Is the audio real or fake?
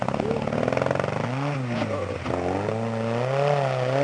real